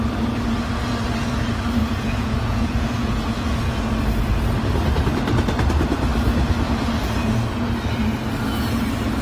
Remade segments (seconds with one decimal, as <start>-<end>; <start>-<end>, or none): 1.8-3.8